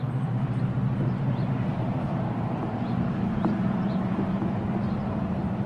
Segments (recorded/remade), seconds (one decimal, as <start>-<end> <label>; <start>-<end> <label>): 0.0-4.4 remade; 4.4-5.0 recorded; 5.0-5.7 remade